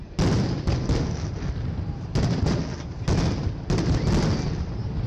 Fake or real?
real